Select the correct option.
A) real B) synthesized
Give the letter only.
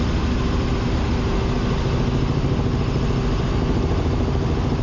A